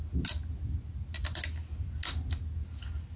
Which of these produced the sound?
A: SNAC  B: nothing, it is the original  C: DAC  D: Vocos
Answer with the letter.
B